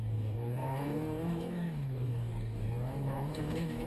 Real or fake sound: fake